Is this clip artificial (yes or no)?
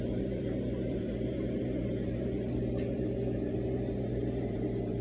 yes